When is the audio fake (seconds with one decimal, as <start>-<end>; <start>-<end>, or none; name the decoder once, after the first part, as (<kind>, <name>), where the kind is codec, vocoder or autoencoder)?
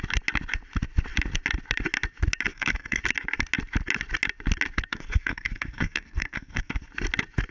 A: 2.5-3.0 (codec, SNAC); 4.9-6.9